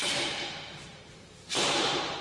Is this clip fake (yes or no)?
yes